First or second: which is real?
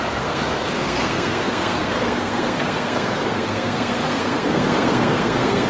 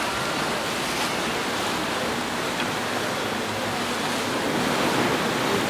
second